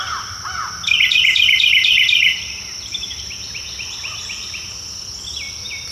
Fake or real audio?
real